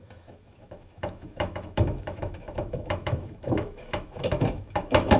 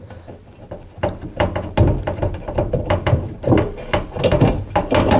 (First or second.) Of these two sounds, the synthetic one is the first